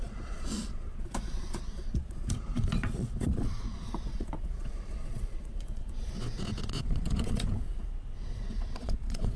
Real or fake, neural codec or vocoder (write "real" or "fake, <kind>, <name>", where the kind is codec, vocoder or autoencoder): fake, vocoder, Vocos